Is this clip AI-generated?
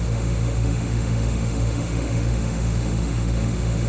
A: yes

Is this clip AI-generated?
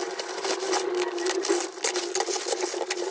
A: no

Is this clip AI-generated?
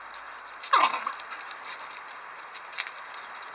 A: no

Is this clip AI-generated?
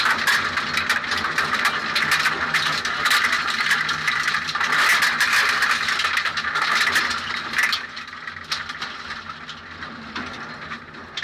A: no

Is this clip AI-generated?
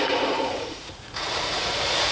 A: yes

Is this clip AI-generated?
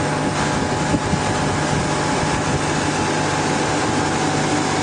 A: no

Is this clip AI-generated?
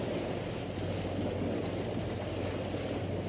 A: no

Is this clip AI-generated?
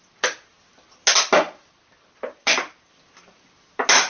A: no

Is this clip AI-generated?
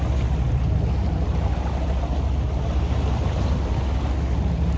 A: no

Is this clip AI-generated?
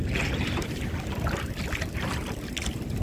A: no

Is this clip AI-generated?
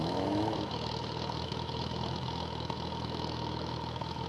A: yes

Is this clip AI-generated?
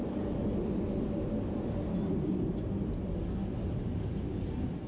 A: no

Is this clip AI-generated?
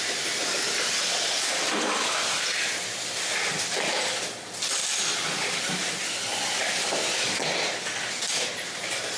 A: no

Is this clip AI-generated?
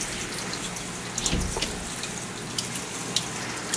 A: no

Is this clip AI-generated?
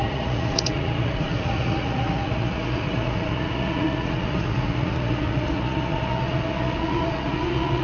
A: yes